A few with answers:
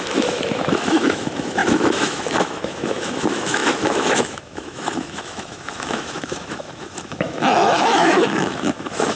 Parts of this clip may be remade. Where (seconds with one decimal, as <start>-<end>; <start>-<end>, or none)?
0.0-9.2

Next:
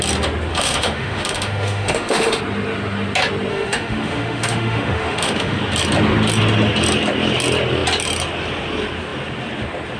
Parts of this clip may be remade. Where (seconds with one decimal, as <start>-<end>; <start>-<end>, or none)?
0.5-2.4; 3.5-5.6

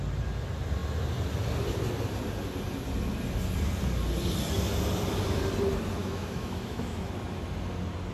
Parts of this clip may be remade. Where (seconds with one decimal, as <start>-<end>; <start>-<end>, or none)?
6.0-7.1

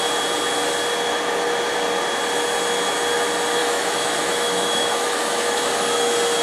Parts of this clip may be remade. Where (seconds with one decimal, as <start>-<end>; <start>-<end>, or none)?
3.6-5.7